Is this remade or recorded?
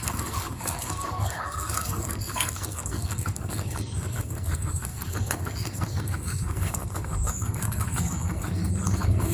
remade